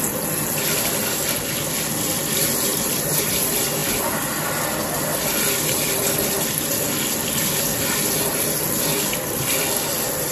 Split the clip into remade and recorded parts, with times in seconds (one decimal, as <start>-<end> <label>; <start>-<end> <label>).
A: 0.0-2.7 recorded; 2.7-3.3 remade; 3.3-10.3 recorded

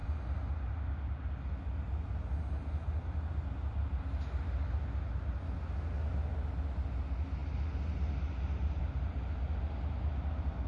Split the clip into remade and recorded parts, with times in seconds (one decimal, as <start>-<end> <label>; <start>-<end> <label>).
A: 0.0-10.7 recorded

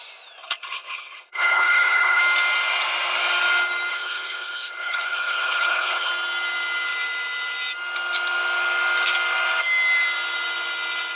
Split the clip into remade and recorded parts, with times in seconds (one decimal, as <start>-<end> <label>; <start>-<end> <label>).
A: 0.0-0.4 recorded; 0.4-2.2 remade; 2.2-3.9 recorded; 3.9-6.1 remade; 6.1-11.2 recorded

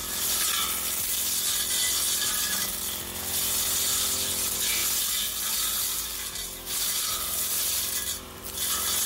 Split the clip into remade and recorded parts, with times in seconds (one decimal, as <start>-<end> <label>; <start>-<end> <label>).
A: 0.0-5.9 recorded; 5.9-8.7 remade; 8.7-9.1 recorded

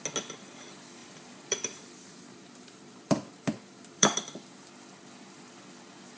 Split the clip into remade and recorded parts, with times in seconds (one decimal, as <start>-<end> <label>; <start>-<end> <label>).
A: 0.0-1.0 recorded; 1.0-4.7 remade; 4.7-6.2 recorded